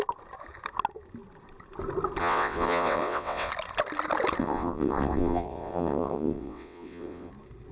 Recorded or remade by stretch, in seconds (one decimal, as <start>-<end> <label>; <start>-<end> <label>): 0.0-2.2 recorded; 2.2-3.5 remade; 3.5-4.4 recorded; 4.4-7.3 remade; 7.3-7.7 recorded